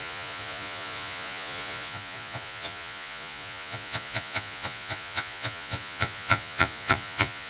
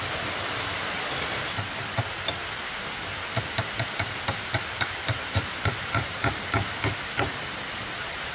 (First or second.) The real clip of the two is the second